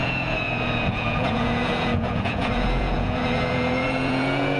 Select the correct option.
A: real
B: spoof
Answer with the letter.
B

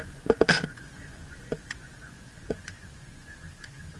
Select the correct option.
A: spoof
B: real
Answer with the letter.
A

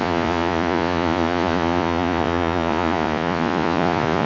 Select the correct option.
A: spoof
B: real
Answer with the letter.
A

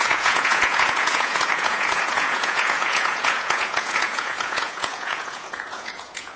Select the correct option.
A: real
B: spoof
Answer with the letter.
B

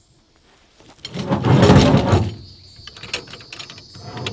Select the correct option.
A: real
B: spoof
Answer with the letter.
A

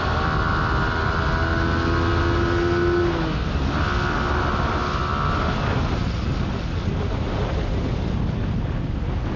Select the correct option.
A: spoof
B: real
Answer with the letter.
B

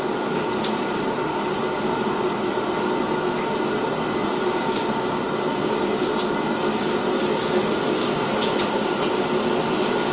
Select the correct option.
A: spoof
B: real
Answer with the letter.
B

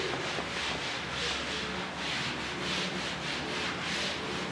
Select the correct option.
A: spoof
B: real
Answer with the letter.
B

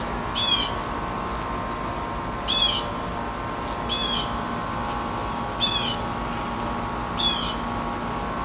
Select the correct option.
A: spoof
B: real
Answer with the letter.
B